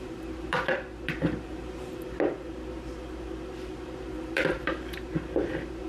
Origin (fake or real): fake